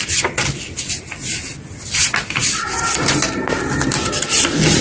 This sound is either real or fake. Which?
real